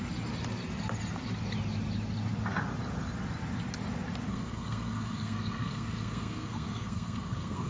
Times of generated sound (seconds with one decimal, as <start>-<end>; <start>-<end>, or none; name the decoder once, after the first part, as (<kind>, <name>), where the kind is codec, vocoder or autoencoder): 4.3-7.7 (codec, SNAC)